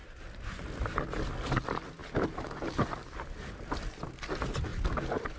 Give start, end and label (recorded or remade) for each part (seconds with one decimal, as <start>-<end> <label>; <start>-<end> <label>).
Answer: 0.0-0.5 remade; 0.5-2.0 recorded; 2.0-4.0 remade; 4.0-4.7 recorded; 4.7-5.4 remade

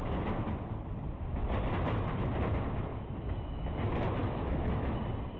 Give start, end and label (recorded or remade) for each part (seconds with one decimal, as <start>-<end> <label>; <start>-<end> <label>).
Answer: 0.0-2.9 recorded; 2.9-3.7 remade; 3.7-4.2 recorded; 4.2-5.0 remade; 5.0-5.4 recorded